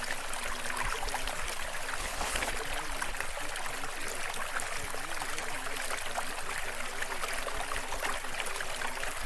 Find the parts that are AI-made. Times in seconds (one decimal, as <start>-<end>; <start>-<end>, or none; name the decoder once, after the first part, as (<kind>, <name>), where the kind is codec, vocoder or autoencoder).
2.0-2.5 (codec, HILCodec)